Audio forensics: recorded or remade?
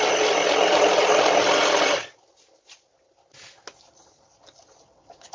recorded